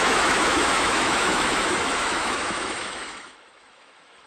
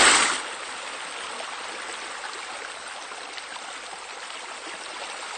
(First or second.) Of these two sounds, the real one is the second